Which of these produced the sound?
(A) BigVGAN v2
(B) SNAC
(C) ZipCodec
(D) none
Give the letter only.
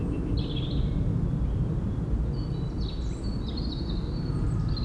D